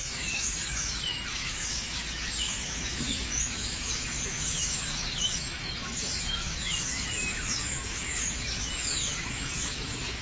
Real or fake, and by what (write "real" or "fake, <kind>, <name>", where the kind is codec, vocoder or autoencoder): fake, autoencoder, DAC-VAE